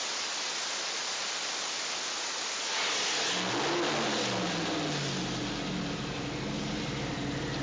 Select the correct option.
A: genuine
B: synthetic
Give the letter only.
A